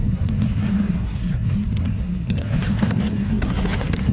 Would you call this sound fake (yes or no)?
yes